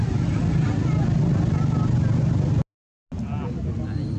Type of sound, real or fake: real